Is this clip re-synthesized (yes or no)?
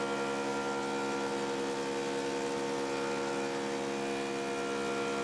no